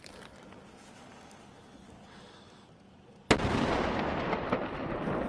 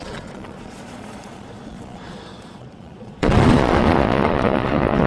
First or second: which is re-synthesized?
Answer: second